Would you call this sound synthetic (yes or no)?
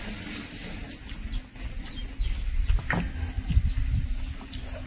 no